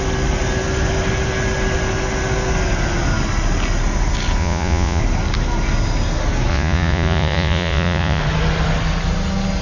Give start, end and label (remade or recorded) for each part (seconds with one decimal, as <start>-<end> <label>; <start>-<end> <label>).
0.0-4.4 recorded; 4.4-5.0 remade; 5.0-6.5 recorded; 6.5-8.2 remade; 8.2-9.6 recorded